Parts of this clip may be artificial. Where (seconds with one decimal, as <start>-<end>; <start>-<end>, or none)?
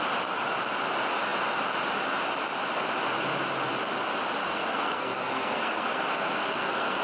4.4-7.0